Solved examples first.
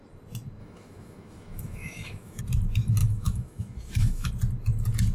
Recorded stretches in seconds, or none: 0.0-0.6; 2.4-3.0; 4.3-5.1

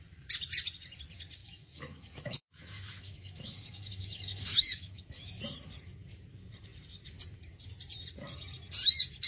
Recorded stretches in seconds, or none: 0.0-1.4; 5.4-9.3

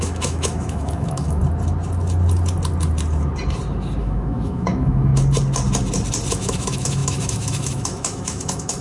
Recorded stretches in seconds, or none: 1.4-4.0; 5.1-6.3

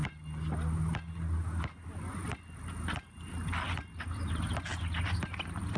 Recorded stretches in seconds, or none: 0.0-5.8

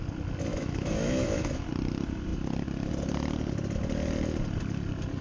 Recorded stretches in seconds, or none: 0.0-0.5; 1.6-5.2

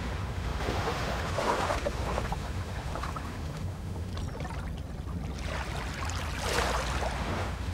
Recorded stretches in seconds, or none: 4.1-7.2